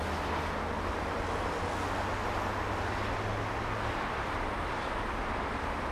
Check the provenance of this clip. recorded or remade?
recorded